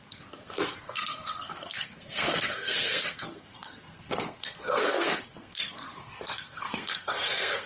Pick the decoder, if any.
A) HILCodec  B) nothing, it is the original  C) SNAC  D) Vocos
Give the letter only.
C